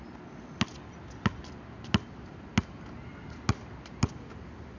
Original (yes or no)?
yes